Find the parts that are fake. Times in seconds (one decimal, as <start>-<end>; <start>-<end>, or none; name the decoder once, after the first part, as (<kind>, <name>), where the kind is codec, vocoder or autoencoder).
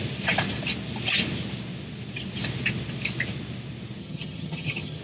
4.0-5.0 (vocoder, HiFi-GAN)